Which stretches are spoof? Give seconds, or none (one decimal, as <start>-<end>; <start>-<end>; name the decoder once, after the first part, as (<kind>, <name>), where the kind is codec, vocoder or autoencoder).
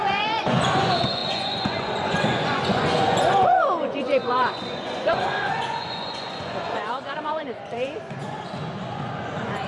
0.0-9.7 (vocoder, Vocos)